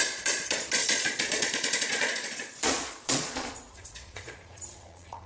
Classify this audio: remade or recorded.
remade